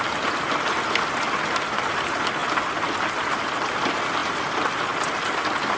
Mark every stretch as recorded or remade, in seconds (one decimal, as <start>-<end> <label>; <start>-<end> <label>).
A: 0.0-5.8 recorded